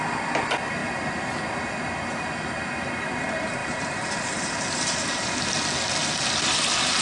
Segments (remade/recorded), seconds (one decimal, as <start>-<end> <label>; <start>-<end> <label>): 0.0-3.6 recorded; 3.6-5.5 remade; 5.5-7.0 recorded